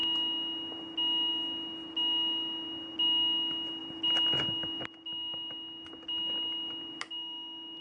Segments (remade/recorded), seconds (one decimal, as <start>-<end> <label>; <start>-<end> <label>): 0.0-7.8 recorded